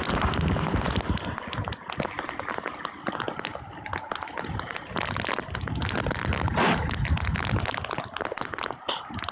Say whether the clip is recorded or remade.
recorded